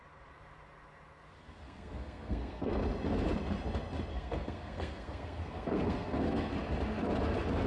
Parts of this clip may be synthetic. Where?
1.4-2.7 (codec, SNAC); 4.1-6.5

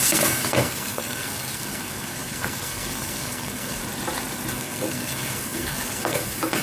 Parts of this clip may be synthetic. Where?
0.0-3.8 (codec, SNAC); 4.5-6.6

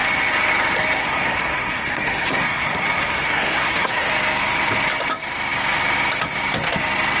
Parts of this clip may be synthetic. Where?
1.0-4.1 (codec, SNAC)

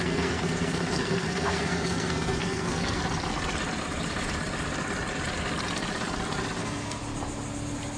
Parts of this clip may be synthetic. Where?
0.0-3.0 (codec, SNAC); 6.6-7.0

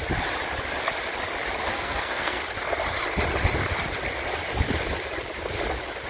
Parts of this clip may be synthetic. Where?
1.7-2.4 (codec, SNAC)

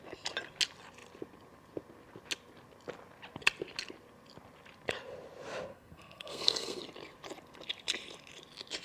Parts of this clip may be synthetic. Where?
5.7-6.8 (codec, SNAC)